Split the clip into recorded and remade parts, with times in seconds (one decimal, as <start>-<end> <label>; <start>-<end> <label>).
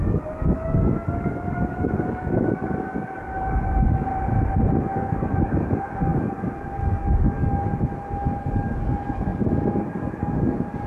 0.0-4.1 remade; 4.1-4.8 recorded; 4.8-7.7 remade; 7.7-8.4 recorded; 8.4-10.9 remade